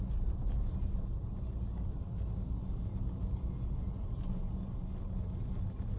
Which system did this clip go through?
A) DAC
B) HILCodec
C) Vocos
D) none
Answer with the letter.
D